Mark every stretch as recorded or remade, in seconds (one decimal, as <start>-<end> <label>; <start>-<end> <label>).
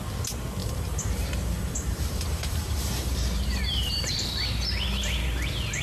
0.0-0.6 recorded; 0.6-4.1 remade; 4.1-5.8 recorded